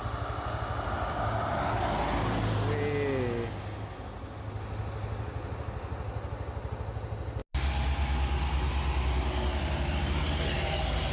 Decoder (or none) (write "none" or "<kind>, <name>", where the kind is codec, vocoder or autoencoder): none